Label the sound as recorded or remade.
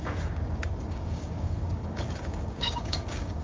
remade